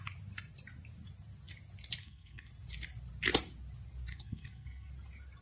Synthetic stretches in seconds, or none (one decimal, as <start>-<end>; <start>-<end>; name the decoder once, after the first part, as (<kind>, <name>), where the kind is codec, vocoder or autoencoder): 2.0-2.5 (codec, SNAC); 4.1-4.9